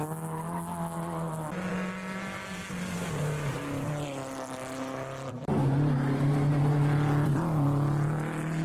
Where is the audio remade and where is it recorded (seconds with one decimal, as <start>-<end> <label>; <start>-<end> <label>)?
0.0-8.6 recorded